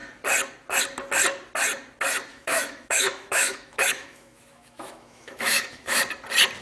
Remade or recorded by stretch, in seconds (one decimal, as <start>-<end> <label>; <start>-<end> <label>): 0.0-2.3 recorded; 2.3-6.0 remade; 6.0-6.6 recorded